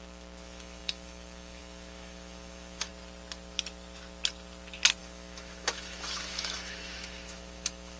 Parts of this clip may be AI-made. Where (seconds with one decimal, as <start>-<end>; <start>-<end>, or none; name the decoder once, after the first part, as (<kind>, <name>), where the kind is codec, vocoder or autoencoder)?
0.0-2.9 (autoencoder, DAC-VAE); 5.0-8.0

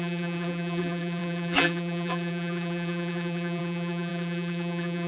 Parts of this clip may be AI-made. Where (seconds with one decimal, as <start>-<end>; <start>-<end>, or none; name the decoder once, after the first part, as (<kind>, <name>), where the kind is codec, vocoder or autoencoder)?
0.0-5.1 (vocoder, BigVGAN v2)

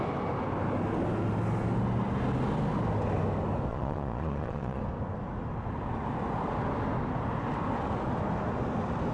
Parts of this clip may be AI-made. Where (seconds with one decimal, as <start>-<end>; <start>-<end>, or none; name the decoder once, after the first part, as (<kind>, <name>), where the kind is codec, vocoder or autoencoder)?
3.7-4.8 (vocoder, Vocos)

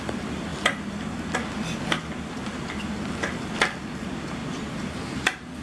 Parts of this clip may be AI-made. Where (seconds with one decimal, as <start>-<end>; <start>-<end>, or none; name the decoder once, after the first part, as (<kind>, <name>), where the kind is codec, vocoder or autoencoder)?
0.0-0.5 (vocoder, BigVGAN v2); 3.9-4.4

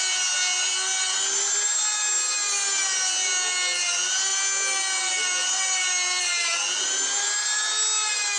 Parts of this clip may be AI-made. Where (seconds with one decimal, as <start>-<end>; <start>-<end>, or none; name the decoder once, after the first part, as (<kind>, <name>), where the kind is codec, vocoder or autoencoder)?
none

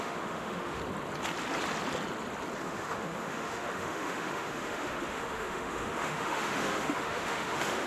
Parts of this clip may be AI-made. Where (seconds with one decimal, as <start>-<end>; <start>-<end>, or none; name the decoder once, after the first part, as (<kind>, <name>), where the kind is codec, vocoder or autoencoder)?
0.0-0.8 (autoencoder, DAC-VAE); 2.6-7.9

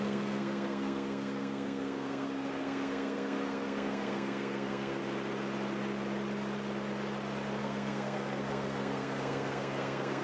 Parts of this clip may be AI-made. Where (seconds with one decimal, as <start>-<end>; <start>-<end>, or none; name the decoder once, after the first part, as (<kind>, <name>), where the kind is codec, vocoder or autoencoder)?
0.0-5.0 (codec, SNAC); 7.6-10.2